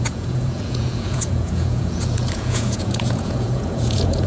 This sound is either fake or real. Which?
fake